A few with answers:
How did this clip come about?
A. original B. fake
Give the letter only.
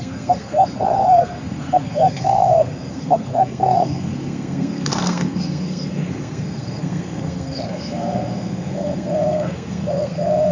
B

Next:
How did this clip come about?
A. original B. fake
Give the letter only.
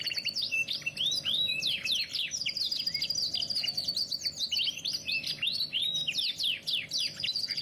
A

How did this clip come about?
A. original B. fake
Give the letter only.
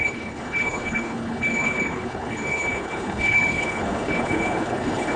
B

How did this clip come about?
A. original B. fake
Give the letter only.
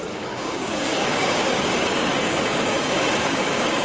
B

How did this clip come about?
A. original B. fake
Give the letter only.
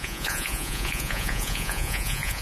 B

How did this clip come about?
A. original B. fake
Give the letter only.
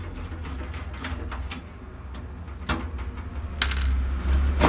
A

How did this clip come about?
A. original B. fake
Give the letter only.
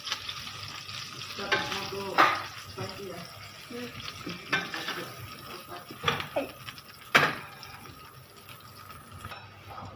A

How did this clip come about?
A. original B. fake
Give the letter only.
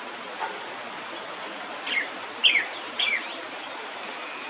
A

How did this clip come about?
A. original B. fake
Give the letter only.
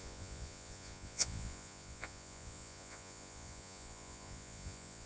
B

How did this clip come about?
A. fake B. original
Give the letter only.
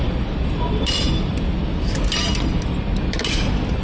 B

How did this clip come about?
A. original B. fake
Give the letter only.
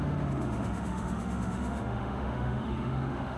B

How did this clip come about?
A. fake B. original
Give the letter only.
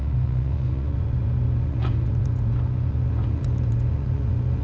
A